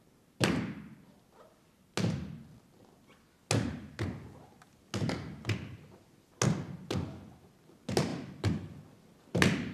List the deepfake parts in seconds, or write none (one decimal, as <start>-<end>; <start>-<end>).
none